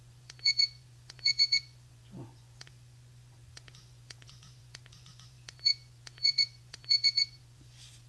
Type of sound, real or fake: fake